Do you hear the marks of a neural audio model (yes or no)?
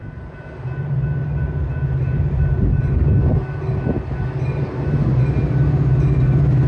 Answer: no